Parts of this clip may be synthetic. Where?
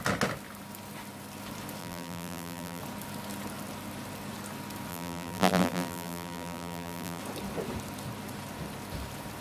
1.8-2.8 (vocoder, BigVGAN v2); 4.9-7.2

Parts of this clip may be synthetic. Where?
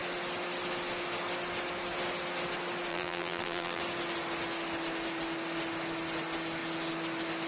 2.9-3.8 (vocoder, BigVGAN v2)